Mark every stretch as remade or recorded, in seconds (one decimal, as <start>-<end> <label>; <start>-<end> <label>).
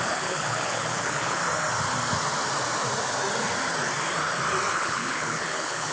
0.0-1.4 remade; 1.4-4.7 recorded; 4.7-5.9 remade